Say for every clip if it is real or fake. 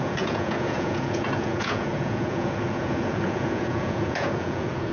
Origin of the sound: fake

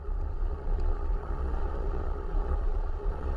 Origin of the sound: fake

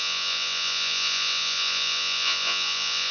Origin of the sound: fake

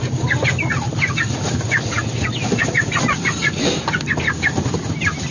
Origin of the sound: real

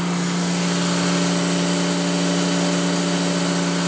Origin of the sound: real